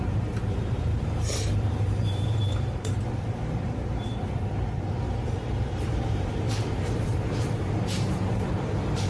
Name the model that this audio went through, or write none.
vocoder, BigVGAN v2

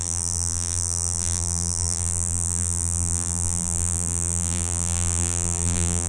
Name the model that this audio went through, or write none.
vocoder, BigVGAN v2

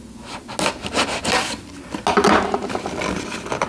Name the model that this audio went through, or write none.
none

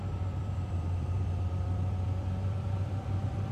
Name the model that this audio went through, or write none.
vocoder, BigVGAN v2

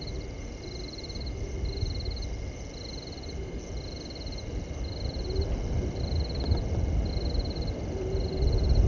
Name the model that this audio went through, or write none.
none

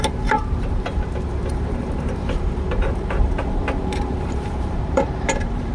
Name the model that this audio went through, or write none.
vocoder, BigVGAN v2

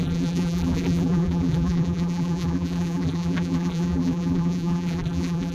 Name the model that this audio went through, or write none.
vocoder, BigVGAN v2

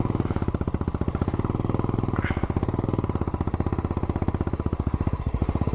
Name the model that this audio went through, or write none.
vocoder, BigVGAN v2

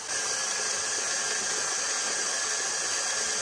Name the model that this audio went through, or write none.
none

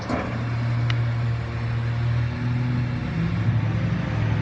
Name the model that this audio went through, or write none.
none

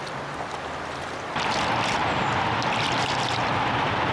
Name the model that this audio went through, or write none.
none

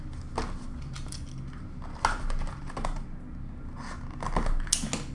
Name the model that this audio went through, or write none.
none